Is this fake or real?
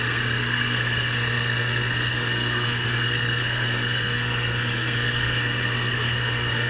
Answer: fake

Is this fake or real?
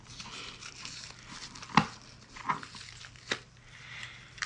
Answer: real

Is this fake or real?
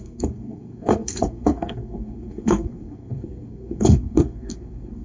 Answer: fake